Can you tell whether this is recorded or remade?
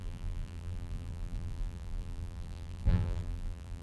remade